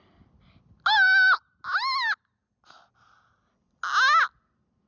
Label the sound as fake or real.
real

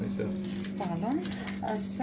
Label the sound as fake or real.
real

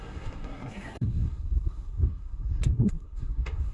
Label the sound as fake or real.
fake